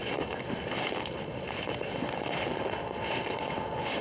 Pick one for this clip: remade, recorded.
recorded